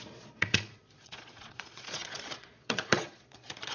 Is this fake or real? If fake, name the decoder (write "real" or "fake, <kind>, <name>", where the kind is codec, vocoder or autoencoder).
fake, vocoder, Vocos